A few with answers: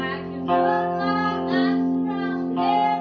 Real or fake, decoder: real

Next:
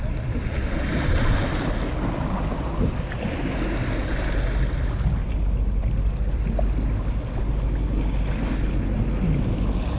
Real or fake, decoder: real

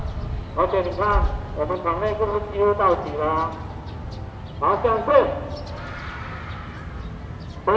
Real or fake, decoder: real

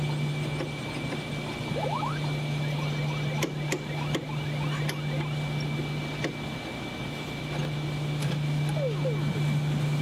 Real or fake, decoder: real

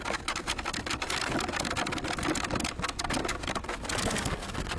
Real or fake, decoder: real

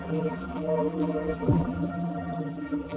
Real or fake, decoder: fake, vocoder, BigVGAN v2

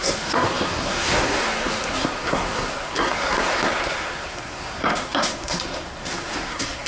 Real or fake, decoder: fake, codec, SNAC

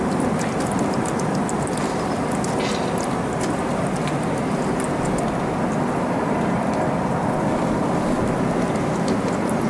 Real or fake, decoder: real